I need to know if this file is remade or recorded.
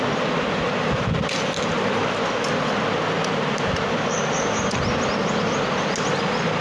recorded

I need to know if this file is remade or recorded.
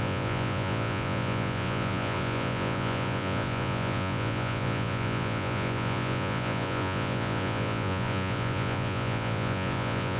remade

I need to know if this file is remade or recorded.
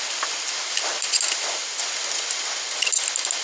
recorded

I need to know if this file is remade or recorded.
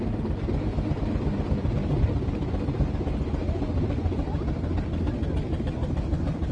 recorded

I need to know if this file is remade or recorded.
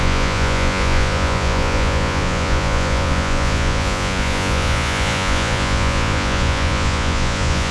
remade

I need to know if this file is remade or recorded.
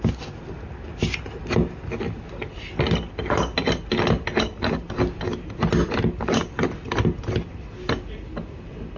recorded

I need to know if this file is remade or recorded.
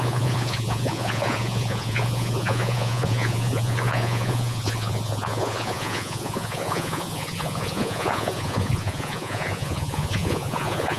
remade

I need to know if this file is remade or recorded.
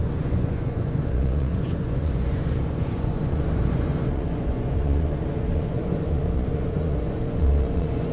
remade